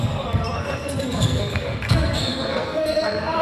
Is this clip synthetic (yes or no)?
yes